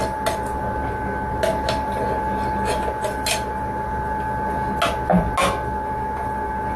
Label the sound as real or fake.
real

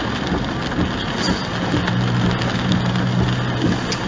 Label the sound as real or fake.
real